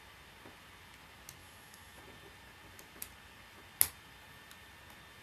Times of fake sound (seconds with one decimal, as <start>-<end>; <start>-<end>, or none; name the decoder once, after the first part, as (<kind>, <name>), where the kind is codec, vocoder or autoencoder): 1.4-2.0 (autoencoder, DAC-VAE)